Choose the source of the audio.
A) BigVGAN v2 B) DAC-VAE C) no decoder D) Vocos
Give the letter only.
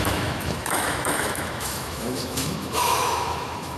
B